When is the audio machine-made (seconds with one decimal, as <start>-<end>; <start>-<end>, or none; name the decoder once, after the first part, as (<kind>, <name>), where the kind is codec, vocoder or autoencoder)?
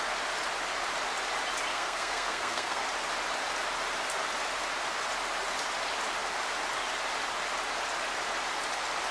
1.7-2.8 (codec, SNAC)